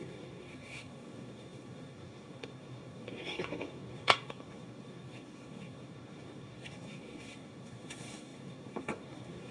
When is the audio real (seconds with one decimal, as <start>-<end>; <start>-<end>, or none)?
none